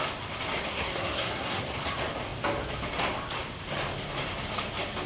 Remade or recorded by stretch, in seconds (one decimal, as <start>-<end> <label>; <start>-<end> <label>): 0.0-0.7 recorded; 0.7-1.6 remade; 1.6-5.1 recorded